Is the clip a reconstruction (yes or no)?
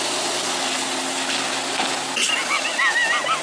no